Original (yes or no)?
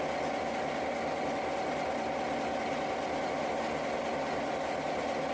yes